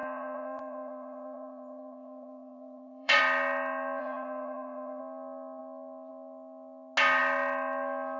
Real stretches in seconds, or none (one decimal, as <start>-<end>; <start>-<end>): 3.2-4.0; 5.0-8.2